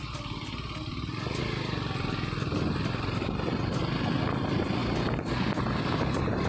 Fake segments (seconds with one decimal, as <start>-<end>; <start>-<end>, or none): none